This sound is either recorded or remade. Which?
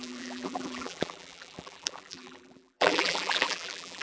remade